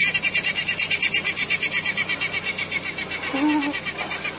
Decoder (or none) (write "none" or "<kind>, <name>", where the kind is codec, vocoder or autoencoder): none